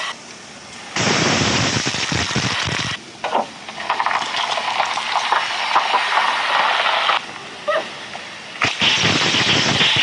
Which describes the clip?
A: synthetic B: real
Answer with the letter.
B